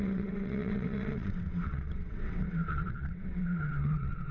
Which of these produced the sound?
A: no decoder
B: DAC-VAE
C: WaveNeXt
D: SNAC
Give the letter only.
C